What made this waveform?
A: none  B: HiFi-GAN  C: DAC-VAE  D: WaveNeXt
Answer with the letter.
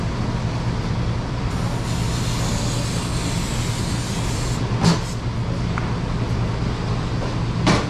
A